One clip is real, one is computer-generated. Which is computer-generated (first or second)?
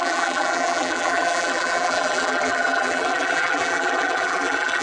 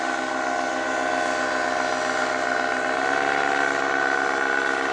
first